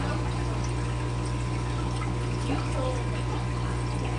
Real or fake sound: real